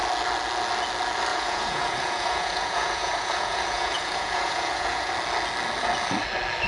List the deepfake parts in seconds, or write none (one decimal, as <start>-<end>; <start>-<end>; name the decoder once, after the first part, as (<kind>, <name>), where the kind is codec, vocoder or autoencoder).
1.3-5.1 (vocoder, Vocos)